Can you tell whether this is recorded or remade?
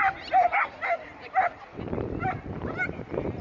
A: recorded